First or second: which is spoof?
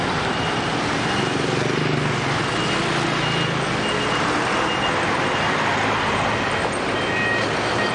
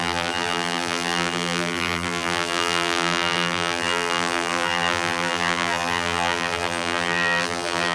second